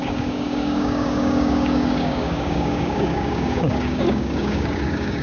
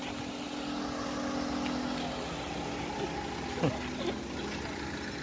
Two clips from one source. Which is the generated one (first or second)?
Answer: first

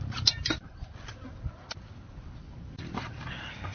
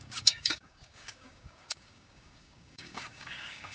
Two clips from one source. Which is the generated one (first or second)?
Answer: second